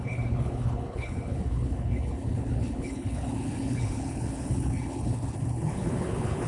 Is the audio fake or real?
fake